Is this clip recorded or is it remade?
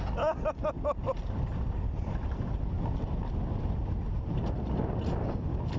recorded